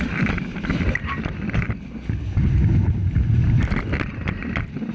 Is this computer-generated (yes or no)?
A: no